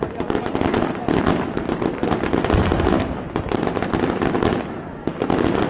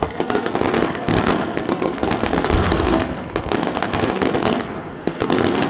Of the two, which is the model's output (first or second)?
second